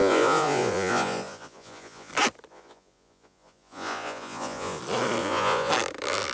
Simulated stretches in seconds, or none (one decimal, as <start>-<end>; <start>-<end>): 0.0-2.1; 2.5-4.8; 5.2-5.7